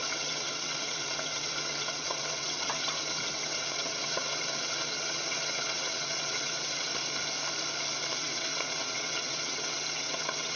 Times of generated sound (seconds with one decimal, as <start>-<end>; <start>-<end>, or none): 0.0-6.9; 8.2-10.6